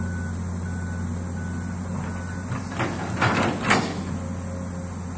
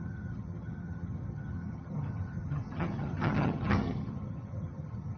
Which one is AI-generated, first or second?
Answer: second